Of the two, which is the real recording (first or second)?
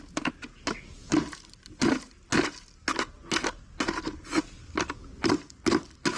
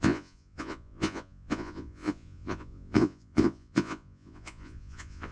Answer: first